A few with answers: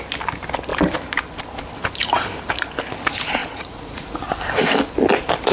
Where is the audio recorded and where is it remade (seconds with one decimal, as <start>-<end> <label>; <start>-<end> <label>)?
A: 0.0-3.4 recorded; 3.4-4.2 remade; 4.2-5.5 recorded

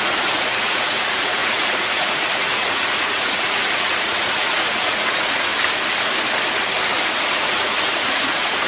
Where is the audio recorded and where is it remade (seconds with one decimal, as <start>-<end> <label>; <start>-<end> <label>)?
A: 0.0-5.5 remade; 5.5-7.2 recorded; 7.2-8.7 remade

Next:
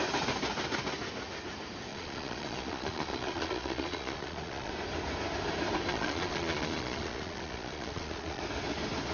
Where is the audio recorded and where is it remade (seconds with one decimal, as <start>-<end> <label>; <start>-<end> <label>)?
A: 0.0-1.9 recorded; 1.9-4.7 remade; 4.7-5.9 recorded; 5.9-8.4 remade; 8.4-9.1 recorded